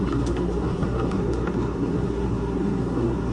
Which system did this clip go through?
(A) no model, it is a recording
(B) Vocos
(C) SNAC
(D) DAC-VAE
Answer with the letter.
C